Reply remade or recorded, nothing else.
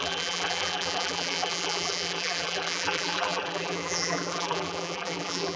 remade